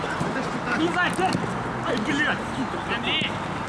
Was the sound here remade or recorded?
recorded